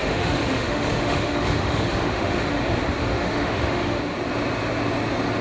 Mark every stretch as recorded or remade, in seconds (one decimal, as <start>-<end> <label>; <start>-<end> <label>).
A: 0.0-2.6 remade; 2.6-3.0 recorded; 3.0-4.0 remade; 4.0-5.4 recorded